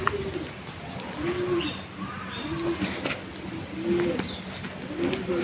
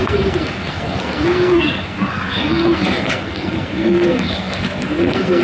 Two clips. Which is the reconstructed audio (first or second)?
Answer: second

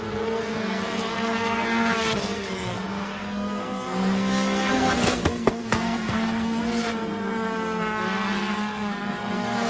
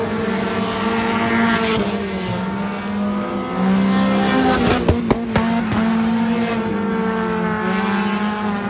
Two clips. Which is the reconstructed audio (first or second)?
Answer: first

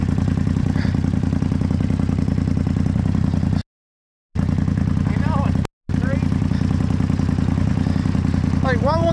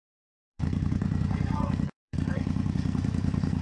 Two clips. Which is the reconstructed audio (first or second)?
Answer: second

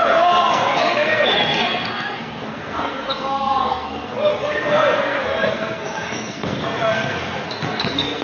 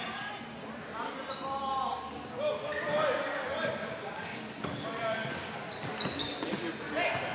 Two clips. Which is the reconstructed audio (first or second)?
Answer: first